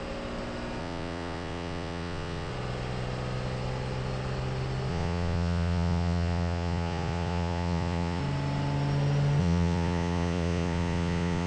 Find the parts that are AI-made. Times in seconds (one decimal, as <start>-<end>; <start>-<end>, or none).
0.8-2.5; 4.9-8.2; 9.4-11.5